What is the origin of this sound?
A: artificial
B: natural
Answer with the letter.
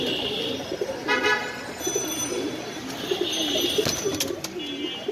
B